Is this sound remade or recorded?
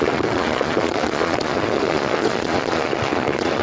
remade